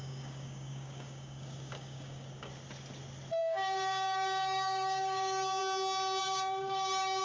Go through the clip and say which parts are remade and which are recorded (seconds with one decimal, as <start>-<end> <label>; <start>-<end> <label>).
0.0-2.5 remade; 2.5-3.4 recorded; 3.4-5.6 remade; 5.6-6.2 recorded; 6.2-7.2 remade